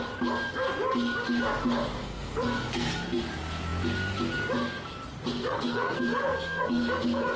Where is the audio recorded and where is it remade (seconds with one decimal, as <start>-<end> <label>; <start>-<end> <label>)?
0.0-2.0 recorded; 2.0-3.2 remade; 3.2-5.4 recorded; 5.4-7.4 remade